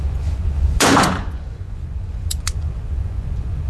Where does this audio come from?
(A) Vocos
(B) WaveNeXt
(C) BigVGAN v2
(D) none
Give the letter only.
A